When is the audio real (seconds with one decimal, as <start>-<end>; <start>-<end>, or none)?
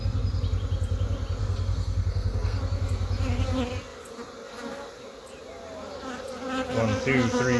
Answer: 0.0-1.4; 2.6-7.6